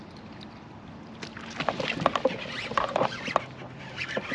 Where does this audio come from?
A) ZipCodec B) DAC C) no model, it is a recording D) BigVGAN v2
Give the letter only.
C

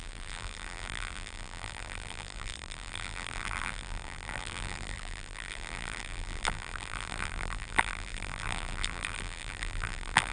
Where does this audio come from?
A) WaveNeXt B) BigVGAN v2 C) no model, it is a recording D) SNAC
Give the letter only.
B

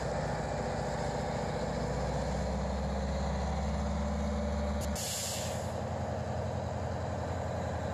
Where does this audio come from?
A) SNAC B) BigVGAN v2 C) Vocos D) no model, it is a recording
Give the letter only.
D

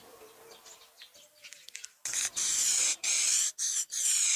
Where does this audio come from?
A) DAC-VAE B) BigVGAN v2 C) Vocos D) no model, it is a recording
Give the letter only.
D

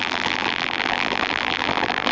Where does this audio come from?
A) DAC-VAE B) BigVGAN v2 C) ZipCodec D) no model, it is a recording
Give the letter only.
B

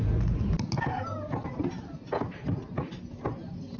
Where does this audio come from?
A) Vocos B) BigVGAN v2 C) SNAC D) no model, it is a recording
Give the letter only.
D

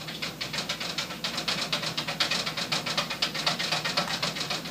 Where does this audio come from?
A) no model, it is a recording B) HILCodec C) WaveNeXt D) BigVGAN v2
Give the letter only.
A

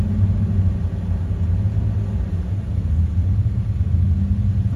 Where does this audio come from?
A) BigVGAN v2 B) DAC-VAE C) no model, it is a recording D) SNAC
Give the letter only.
C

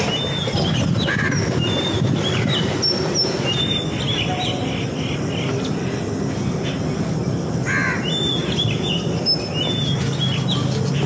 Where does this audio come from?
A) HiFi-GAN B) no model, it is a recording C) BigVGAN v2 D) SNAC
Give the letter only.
B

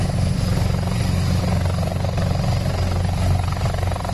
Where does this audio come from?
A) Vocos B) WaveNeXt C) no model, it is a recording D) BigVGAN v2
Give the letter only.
C